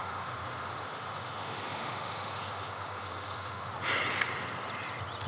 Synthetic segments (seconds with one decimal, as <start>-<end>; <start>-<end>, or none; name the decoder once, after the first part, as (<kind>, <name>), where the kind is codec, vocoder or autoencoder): 0.0-3.7 (autoencoder, DAC-VAE)